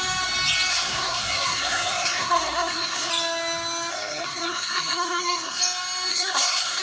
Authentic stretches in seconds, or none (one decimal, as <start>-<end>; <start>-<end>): 0.0-0.7; 3.1-3.9; 5.6-6.1

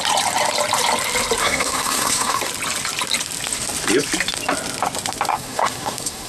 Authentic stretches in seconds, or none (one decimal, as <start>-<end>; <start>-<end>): 0.0-1.4; 2.5-5.3

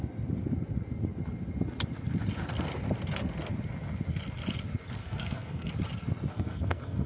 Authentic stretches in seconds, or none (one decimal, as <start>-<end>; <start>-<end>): 0.0-5.0; 5.7-6.3

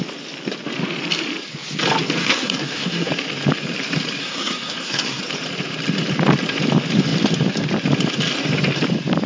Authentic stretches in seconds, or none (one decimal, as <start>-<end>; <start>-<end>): 0.0-2.2; 3.1-4.2; 5.2-9.3